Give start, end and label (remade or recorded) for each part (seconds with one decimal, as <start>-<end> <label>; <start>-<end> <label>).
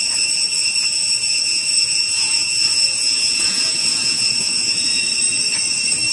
0.0-1.3 recorded; 1.3-5.0 remade; 5.0-6.1 recorded